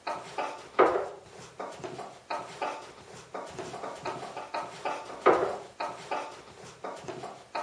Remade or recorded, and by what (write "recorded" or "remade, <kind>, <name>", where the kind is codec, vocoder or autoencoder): recorded